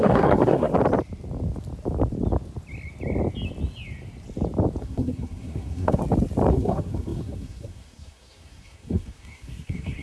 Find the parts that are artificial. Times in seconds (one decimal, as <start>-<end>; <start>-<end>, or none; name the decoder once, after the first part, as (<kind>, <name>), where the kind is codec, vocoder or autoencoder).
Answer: 0.0-0.7 (codec, SNAC); 4.8-6.0; 6.5-10.0

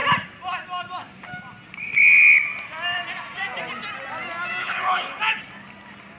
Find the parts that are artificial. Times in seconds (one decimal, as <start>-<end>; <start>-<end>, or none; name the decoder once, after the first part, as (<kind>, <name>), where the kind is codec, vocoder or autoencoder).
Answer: 4.6-5.2 (codec, HILCodec)